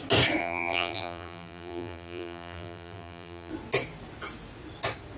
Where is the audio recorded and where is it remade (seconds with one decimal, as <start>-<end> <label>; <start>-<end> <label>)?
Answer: 0.0-0.4 recorded; 0.4-3.5 remade; 3.5-5.2 recorded